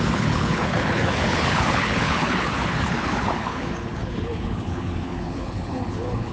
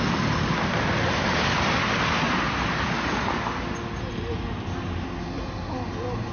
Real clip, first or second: second